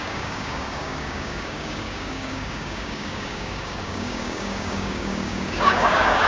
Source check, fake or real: fake